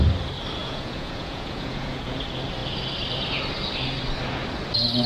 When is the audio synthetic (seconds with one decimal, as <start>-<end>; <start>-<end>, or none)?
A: 0.6-2.2